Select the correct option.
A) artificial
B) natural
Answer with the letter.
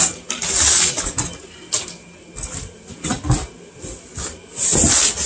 B